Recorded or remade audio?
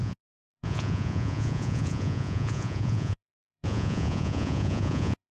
remade